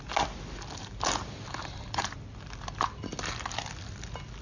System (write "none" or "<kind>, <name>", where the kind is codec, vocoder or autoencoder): none